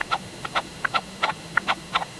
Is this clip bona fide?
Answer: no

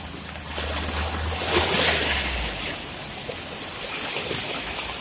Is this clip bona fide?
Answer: yes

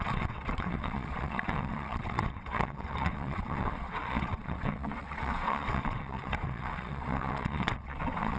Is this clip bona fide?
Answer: no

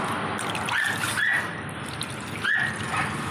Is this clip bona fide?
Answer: yes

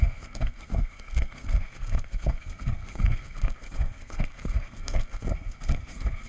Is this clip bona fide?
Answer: no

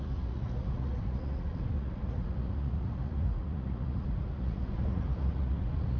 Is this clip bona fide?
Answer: no